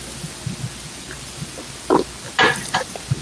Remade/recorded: recorded